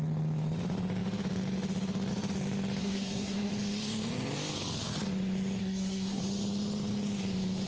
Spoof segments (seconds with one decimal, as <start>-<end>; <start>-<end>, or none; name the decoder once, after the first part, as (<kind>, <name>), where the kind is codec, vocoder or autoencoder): 2.8-3.5 (codec, SNAC); 5.6-6.2